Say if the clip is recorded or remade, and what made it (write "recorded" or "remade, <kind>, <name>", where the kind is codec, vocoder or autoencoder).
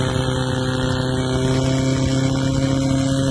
recorded